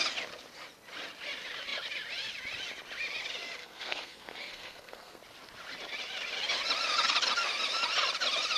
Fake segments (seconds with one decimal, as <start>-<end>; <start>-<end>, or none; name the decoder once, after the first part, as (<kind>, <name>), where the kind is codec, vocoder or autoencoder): 3.6-5.2 (codec, SNAC)